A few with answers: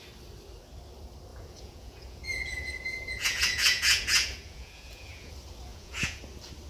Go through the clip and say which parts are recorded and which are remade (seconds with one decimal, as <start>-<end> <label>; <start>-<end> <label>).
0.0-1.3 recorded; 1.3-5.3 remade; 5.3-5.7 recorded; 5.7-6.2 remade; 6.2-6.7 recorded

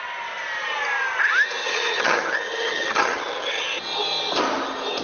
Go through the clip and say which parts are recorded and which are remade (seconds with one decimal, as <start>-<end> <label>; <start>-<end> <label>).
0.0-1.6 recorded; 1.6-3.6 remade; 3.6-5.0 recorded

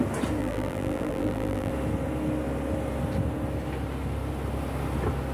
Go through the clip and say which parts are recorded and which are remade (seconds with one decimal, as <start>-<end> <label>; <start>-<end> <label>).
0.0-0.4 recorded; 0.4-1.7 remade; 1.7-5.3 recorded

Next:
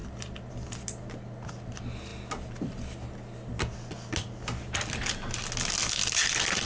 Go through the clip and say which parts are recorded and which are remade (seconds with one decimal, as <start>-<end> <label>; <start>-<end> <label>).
0.0-6.7 recorded